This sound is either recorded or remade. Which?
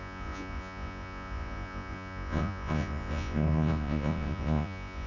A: remade